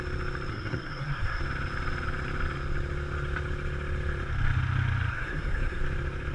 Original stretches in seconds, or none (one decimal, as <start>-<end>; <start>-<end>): 0.0-0.5; 1.4-5.1; 5.8-6.3